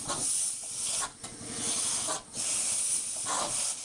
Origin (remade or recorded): recorded